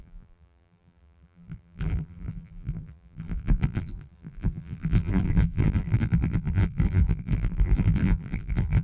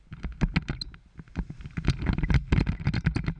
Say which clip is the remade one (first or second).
first